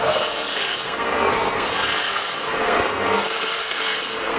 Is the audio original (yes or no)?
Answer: no